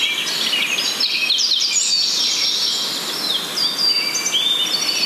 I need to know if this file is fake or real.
real